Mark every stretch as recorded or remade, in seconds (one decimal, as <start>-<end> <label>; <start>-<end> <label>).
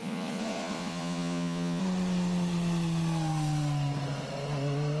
0.0-1.8 remade; 1.8-5.0 recorded